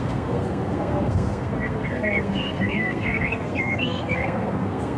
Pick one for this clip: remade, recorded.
remade